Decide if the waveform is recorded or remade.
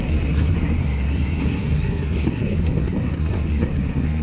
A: remade